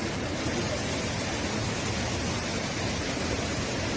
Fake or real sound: real